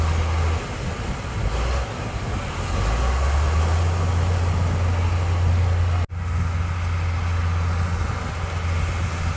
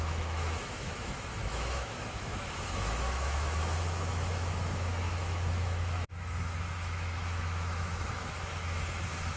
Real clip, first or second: first